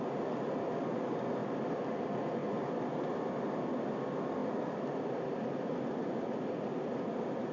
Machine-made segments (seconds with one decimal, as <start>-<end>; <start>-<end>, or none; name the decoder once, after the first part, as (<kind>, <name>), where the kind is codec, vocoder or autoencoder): 1.4-1.9 (vocoder, BigVGAN v2); 2.4-3.1; 4.4-6.7